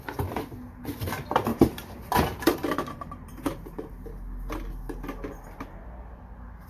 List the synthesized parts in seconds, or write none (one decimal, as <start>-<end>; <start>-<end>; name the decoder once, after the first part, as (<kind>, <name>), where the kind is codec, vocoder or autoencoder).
1.5-3.9 (vocoder, BigVGAN v2)

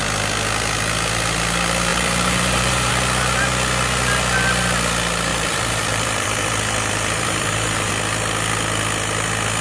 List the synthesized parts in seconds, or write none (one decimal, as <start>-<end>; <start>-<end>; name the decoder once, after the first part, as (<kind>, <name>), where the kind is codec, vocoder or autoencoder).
1.9-2.9 (vocoder, BigVGAN v2); 5.3-7.9